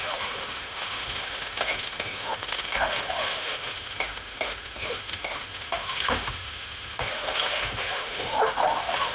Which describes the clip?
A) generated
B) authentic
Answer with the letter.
A